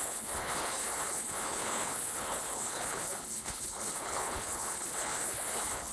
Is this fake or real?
fake